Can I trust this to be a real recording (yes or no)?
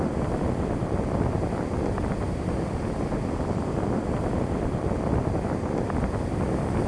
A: no